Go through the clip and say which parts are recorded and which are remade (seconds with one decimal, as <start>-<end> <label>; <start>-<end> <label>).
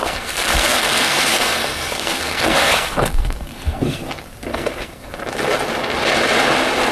0.0-4.1 remade; 4.1-4.5 recorded; 4.5-5.1 remade; 5.1-6.9 recorded